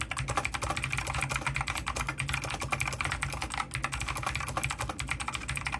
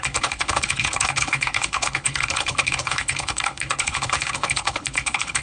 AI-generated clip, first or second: second